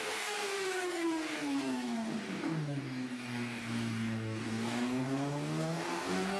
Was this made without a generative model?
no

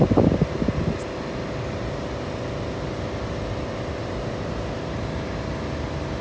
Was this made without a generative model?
yes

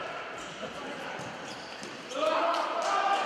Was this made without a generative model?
yes